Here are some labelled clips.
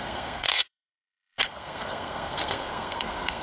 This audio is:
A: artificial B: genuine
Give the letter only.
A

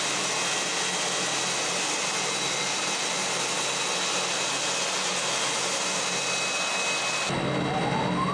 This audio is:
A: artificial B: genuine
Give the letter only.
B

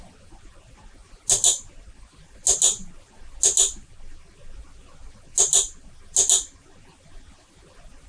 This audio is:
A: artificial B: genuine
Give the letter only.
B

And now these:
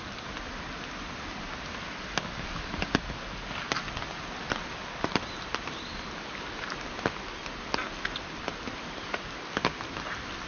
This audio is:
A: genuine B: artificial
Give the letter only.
A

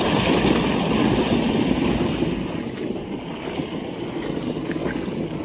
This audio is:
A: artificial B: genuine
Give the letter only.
B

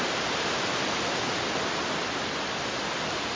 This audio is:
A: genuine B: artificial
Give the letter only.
A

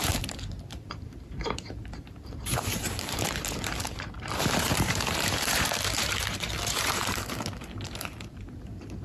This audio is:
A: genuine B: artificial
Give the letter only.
B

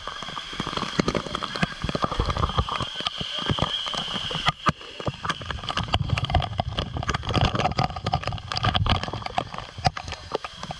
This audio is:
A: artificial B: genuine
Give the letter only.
A